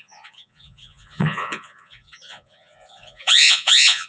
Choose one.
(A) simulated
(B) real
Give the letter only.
A